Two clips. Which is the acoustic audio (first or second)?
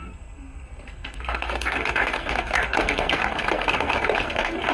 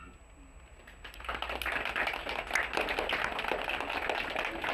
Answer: second